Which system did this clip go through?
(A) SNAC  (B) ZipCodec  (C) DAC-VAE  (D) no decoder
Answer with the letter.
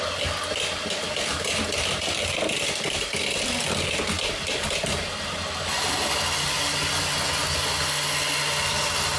D